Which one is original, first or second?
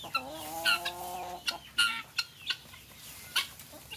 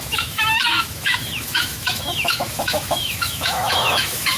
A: first